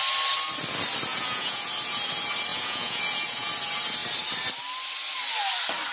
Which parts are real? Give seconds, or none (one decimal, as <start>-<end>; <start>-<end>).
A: 0.0-1.1; 1.7-2.5; 3.5-5.9